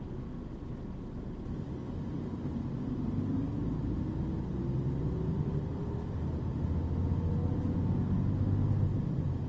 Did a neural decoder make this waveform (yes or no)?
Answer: no